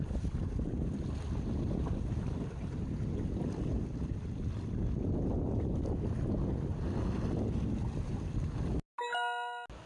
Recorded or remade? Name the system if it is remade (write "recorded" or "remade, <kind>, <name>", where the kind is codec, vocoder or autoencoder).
recorded